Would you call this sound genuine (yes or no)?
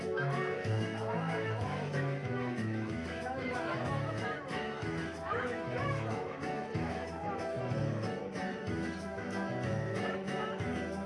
no